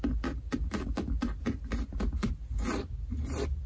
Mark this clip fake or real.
real